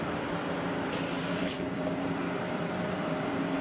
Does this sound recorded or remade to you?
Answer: remade